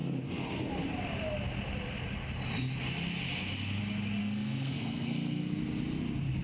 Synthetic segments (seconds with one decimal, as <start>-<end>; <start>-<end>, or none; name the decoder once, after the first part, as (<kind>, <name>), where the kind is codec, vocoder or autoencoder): 4.2-5.6 (codec, SNAC)